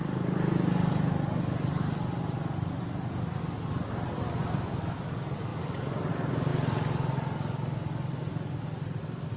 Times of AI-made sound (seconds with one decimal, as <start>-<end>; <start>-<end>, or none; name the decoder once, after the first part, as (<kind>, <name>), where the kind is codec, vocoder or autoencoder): none